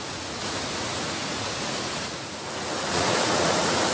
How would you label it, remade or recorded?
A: remade